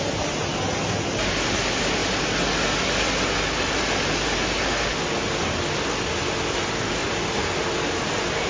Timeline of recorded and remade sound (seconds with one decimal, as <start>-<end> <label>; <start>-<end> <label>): 0.0-8.5 recorded